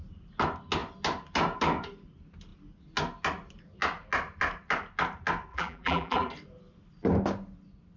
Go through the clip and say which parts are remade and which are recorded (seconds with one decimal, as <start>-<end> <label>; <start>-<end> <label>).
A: 0.0-5.5 recorded; 5.5-6.3 remade; 6.3-8.0 recorded